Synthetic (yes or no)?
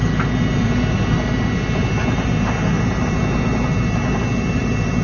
no